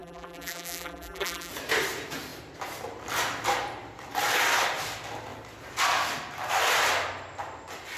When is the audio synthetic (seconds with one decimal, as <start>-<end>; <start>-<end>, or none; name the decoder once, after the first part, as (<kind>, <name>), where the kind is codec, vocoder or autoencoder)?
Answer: 0.0-1.5 (vocoder, BigVGAN v2)